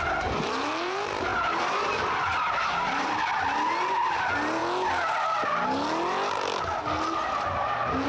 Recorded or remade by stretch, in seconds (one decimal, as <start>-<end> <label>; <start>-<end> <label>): 0.0-8.1 recorded